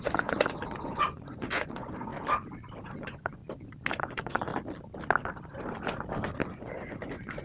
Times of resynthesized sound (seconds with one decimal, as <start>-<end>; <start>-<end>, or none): 0.0-2.1; 2.8-3.4; 4.0-4.5; 6.5-7.4